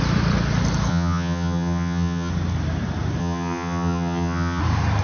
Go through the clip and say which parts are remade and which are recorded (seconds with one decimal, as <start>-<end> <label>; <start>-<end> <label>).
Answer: 0.0-0.9 recorded; 0.9-2.3 remade; 2.3-3.2 recorded; 3.2-4.6 remade; 4.6-5.0 recorded

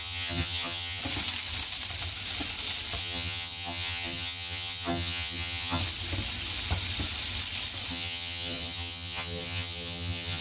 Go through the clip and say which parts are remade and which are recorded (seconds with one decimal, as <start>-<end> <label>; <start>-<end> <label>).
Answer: 0.0-1.0 remade; 1.0-3.0 recorded; 3.0-5.8 remade; 5.8-7.9 recorded; 7.9-10.4 remade

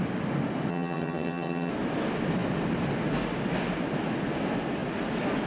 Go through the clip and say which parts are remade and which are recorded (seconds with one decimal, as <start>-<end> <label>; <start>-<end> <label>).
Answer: 0.0-0.7 recorded; 0.7-1.7 remade; 1.7-5.5 recorded

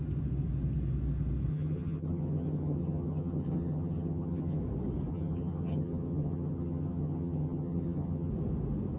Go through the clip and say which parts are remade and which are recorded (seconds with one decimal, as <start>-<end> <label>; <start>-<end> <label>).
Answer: 0.0-1.5 recorded; 1.5-4.6 remade; 4.6-5.1 recorded; 5.1-8.3 remade; 8.3-9.0 recorded

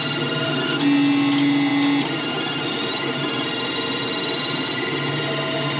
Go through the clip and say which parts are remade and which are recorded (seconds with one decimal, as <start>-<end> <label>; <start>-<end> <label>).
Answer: 0.0-5.8 recorded

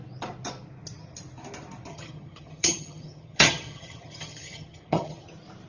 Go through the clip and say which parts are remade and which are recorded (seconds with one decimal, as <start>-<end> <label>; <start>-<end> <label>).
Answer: 0.0-1.9 recorded; 1.9-5.3 remade; 5.3-5.7 recorded

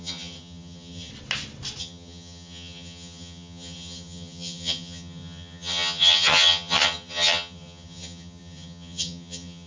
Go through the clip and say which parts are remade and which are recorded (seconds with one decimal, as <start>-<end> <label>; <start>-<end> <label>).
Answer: 0.0-1.1 remade; 1.1-1.8 recorded; 1.8-9.7 remade

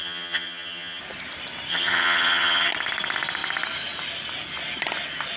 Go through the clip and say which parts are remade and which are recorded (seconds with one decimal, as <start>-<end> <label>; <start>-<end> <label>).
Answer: 0.0-1.0 remade; 1.0-1.7 recorded; 1.7-2.7 remade; 2.7-5.4 recorded